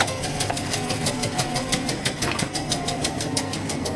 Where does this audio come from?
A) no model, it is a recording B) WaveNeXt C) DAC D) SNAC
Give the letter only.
D